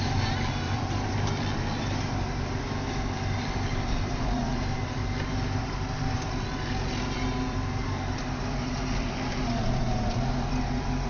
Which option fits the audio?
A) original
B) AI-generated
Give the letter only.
B